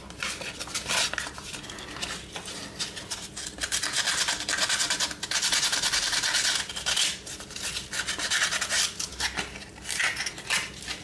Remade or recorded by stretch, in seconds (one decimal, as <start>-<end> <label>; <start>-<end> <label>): 0.0-11.0 recorded